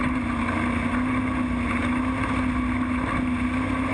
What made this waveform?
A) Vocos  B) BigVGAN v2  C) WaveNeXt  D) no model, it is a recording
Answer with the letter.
D